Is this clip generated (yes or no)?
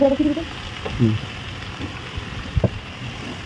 no